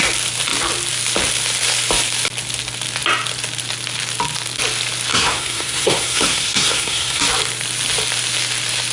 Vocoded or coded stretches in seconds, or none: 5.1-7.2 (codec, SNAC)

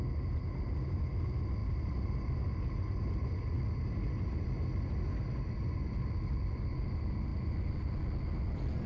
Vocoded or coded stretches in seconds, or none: none

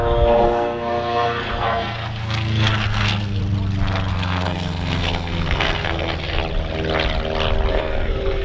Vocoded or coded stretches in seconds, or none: 0.0-3.4 (codec, SNAC); 4.1-6.4; 7.7-8.4

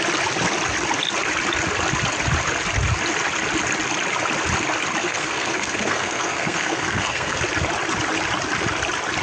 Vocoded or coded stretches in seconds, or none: 5.0-7.4 (codec, SNAC)

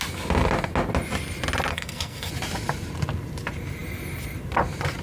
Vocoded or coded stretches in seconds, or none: 1.7-2.3 (codec, SNAC)

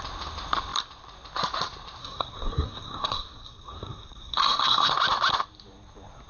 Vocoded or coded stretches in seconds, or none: 2.0-4.9 (codec, SNAC)

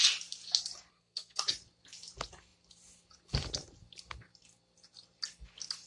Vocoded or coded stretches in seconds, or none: 0.9-1.4 (codec, SNAC)

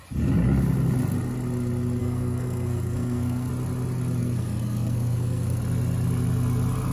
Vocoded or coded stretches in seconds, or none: 2.0-3.5 (codec, SNAC); 4.2-5.6